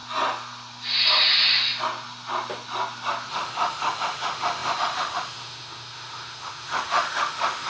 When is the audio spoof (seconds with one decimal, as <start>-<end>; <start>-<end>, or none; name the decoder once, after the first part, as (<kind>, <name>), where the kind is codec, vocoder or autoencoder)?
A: 3.3-7.7 (autoencoder, DAC-VAE)